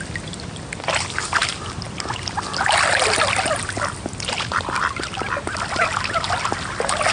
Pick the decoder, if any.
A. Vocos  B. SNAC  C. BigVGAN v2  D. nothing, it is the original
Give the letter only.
D